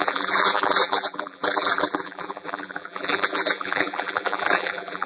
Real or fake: fake